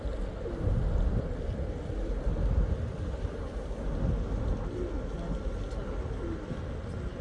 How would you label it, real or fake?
real